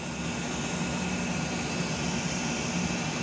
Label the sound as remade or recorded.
recorded